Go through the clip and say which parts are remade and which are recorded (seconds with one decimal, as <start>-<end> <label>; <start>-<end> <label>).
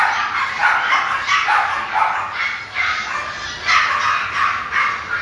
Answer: 0.0-5.2 recorded